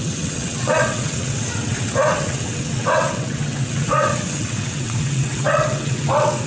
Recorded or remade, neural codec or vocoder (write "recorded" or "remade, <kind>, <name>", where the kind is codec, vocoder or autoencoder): remade, vocoder, WaveNeXt